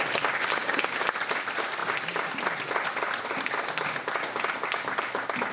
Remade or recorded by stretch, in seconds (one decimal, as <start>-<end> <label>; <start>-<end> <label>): 0.0-0.4 recorded; 0.4-1.0 remade; 1.0-5.5 recorded